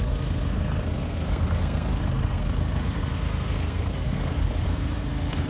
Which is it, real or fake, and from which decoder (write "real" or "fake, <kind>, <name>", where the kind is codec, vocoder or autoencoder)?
fake, codec, SNAC